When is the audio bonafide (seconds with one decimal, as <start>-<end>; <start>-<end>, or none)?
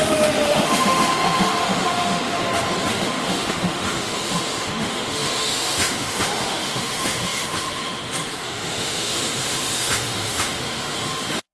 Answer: 2.4-2.9